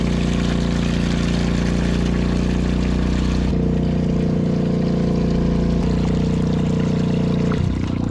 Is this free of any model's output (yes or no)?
yes